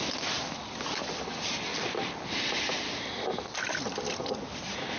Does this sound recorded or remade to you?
recorded